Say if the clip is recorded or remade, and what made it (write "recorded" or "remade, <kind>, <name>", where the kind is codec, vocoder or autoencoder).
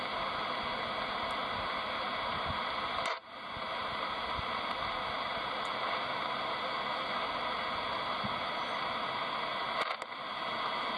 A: recorded